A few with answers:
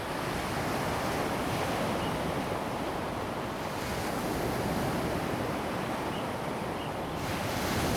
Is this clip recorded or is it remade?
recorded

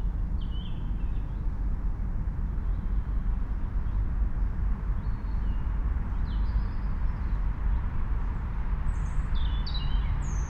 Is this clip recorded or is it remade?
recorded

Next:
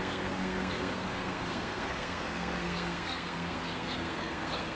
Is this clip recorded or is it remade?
remade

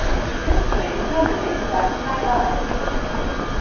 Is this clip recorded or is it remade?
recorded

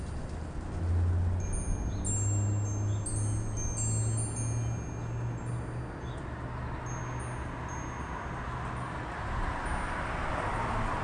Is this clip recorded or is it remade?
recorded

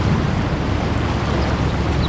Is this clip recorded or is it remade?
recorded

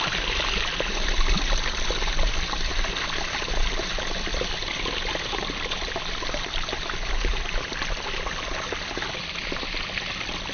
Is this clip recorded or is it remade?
recorded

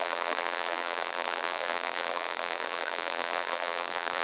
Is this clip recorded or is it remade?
remade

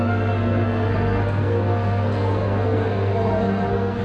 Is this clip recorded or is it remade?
remade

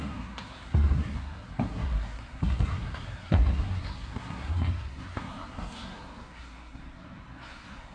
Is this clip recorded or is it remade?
remade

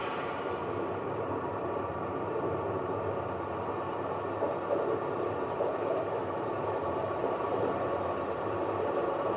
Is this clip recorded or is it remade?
remade